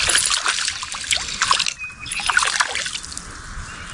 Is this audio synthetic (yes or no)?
no